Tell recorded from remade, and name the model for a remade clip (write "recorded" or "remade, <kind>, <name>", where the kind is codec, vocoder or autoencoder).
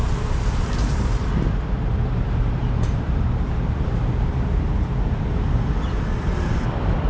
remade, vocoder, BigVGAN v2